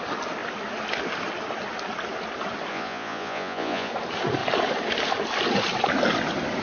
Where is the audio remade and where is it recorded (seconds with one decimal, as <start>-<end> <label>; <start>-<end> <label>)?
0.0-2.7 recorded; 2.7-3.9 remade; 3.9-6.6 recorded